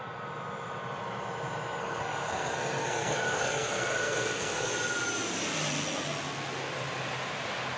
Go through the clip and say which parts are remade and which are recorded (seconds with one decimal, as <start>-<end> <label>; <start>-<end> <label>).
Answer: 0.0-1.8 recorded; 1.8-4.7 remade; 4.7-7.8 recorded